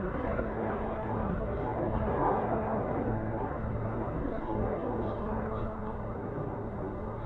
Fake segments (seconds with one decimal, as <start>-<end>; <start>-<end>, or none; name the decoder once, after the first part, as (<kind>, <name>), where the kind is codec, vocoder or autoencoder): 0.0-7.3 (codec, SNAC)